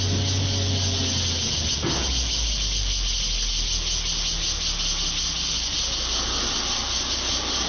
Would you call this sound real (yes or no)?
yes